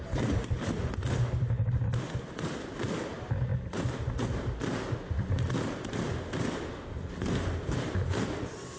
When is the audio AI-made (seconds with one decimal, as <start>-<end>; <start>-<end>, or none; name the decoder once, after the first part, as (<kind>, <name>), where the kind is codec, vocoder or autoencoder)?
none